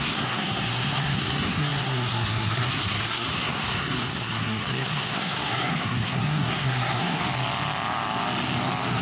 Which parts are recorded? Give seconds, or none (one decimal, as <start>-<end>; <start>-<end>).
7.2-9.0